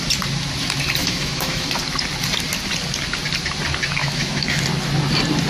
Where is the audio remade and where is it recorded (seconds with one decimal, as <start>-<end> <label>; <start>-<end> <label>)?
0.0-1.0 recorded; 1.0-1.7 remade; 1.7-4.0 recorded; 4.0-4.6 remade; 4.6-5.5 recorded